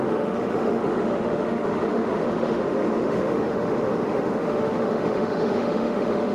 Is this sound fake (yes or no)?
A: yes